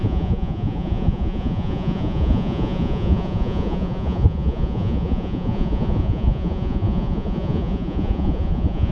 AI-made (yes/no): yes